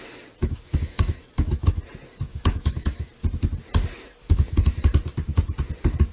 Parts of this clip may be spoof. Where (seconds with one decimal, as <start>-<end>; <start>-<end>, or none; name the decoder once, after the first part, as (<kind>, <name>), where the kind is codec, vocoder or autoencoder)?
0.4-1.8 (autoencoder, DAC-VAE); 2.3-3.1; 4.2-4.7